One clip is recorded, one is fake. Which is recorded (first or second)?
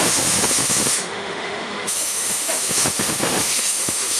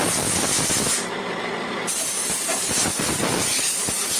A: second